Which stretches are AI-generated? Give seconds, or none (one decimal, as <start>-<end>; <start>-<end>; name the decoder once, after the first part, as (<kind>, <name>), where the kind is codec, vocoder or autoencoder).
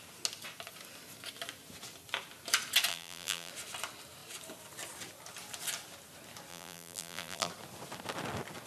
2.9-3.5 (vocoder, BigVGAN v2); 6.5-7.5